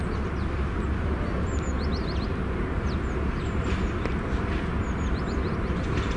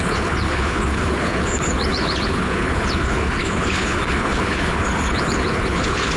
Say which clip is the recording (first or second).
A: first